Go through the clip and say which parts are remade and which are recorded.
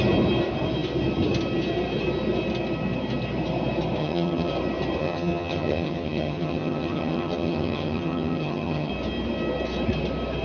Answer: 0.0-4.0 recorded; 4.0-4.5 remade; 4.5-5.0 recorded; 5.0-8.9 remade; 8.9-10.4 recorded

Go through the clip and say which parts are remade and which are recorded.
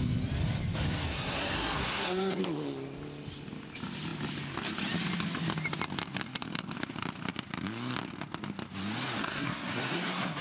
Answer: 0.0-1.1 recorded; 1.1-2.4 remade; 2.4-9.2 recorded; 9.2-10.4 remade